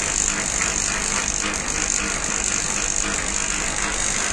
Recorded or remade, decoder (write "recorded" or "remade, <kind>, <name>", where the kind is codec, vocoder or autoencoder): recorded